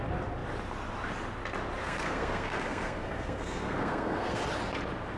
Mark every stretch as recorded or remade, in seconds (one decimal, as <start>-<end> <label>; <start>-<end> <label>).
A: 0.0-1.8 recorded; 1.8-4.4 remade; 4.4-5.2 recorded